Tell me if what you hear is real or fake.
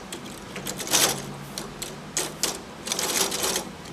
real